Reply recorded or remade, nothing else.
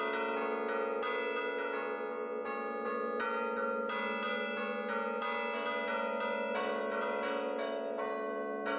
recorded